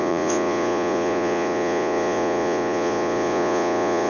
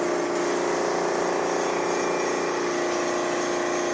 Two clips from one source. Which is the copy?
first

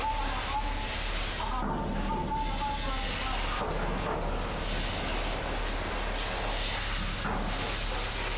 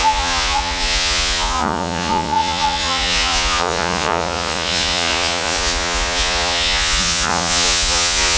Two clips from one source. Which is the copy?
second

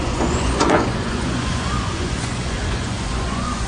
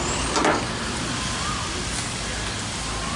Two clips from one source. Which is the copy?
first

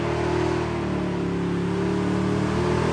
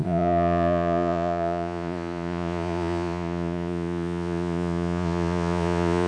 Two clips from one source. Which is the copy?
second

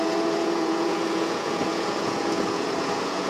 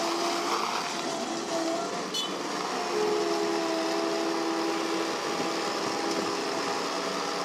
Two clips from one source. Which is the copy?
first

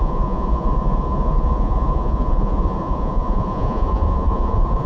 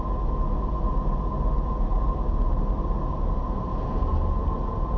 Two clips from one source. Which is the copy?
first